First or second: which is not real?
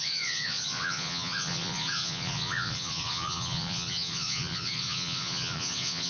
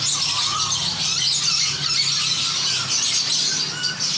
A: first